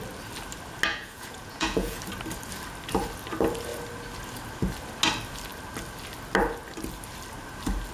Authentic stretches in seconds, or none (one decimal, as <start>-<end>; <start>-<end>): 0.0-0.9; 2.0-7.9